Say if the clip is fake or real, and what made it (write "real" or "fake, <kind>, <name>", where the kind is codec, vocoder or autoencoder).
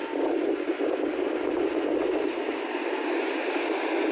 real